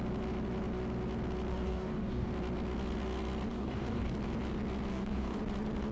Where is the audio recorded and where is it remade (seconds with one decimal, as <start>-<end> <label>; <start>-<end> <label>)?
0.0-1.5 recorded; 1.5-2.3 remade; 2.3-3.5 recorded; 3.5-4.1 remade; 4.1-4.9 recorded; 4.9-5.4 remade; 5.4-5.9 recorded